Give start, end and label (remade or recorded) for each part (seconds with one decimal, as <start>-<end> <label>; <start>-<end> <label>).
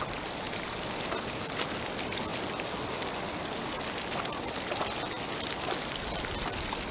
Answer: 0.0-6.9 recorded